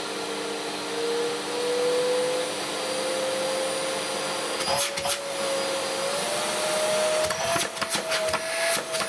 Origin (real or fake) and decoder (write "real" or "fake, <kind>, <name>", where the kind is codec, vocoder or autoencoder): real